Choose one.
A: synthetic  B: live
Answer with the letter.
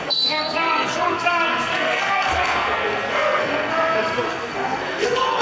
A